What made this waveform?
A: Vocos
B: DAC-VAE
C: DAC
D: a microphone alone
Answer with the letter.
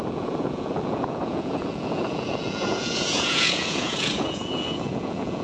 A